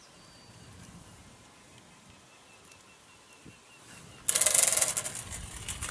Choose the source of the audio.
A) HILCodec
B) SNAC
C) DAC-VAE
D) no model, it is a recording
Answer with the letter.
D